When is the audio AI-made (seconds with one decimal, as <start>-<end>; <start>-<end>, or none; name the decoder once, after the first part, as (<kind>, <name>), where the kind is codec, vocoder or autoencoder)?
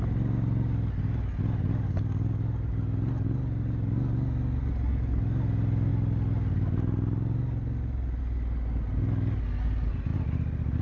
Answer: none